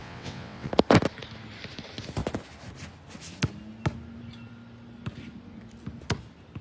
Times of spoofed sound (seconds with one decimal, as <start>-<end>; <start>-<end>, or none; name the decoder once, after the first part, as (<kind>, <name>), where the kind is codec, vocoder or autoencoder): 0.0-0.7 (vocoder, WaveNeXt)